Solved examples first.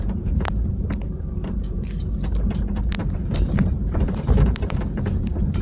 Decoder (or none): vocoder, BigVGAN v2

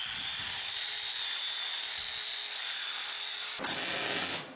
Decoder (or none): none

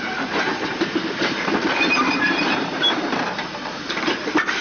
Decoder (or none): vocoder, BigVGAN v2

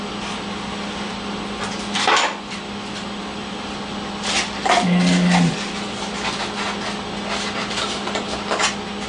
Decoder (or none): none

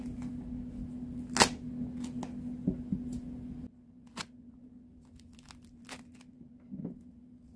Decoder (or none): none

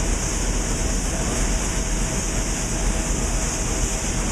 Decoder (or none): none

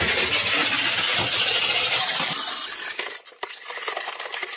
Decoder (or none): none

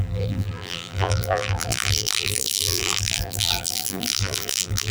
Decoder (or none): vocoder, BigVGAN v2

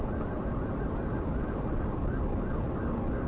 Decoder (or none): none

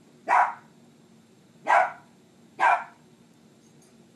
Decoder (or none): vocoder, BigVGAN v2